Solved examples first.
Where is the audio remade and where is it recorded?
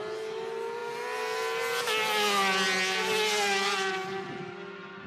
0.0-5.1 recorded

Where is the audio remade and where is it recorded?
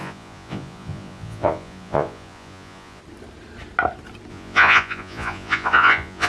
0.0-3.0 remade; 3.0-4.3 recorded; 4.3-6.3 remade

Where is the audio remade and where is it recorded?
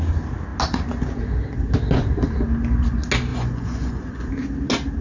0.0-3.3 recorded; 3.3-4.3 remade; 4.3-5.0 recorded